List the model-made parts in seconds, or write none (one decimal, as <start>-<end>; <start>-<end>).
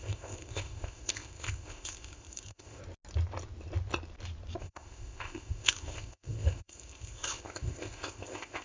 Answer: 0.0-2.8; 4.6-8.6